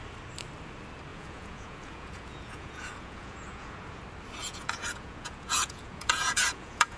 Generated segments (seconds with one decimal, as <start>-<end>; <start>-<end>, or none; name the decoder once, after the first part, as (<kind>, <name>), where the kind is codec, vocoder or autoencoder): 1.1-4.0 (vocoder, Vocos); 4.4-7.0